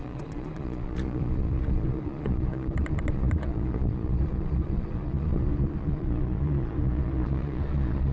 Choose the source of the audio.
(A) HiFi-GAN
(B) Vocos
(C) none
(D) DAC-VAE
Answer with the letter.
B